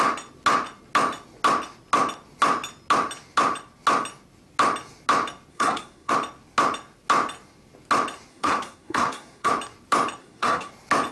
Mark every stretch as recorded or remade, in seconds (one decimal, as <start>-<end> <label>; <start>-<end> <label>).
0.0-5.5 recorded; 5.5-6.1 remade; 6.1-8.3 recorded; 8.3-9.5 remade; 9.5-10.2 recorded; 10.2-10.7 remade; 10.7-11.1 recorded